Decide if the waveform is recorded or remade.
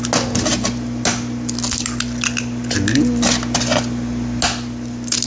recorded